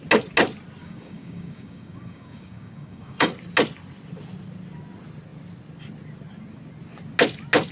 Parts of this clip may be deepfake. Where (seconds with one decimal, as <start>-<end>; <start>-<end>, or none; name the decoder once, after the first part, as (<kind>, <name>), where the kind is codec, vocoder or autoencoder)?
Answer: 0.8-3.3 (codec, DAC)